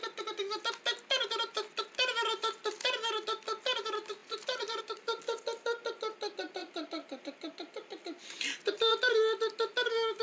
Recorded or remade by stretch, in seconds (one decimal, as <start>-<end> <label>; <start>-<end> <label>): 0.0-2.2 recorded; 2.2-2.7 remade; 2.7-4.2 recorded; 4.2-4.8 remade; 4.8-6.6 recorded; 6.6-9.1 remade; 9.1-10.2 recorded